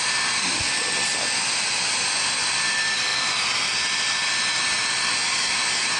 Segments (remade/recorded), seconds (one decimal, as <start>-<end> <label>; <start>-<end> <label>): 0.0-6.0 recorded